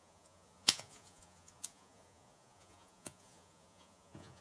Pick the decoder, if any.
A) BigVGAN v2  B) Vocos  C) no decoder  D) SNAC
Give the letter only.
B